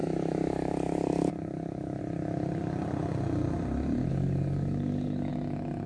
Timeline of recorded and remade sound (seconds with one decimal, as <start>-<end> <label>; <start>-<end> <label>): 0.0-2.0 remade; 2.0-4.1 recorded; 4.1-5.3 remade; 5.3-5.9 recorded